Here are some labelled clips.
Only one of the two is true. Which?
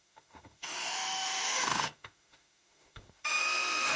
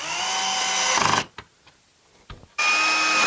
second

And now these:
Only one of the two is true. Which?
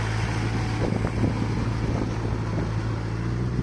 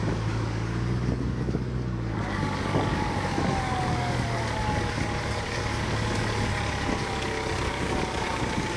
first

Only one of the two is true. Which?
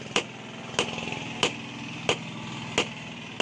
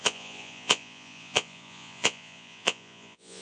first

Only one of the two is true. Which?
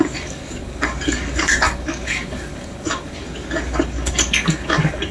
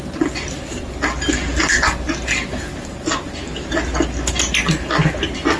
second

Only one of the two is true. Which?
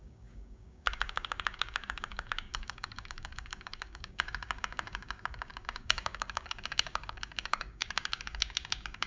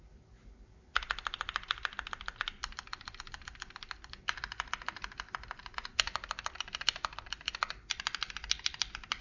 second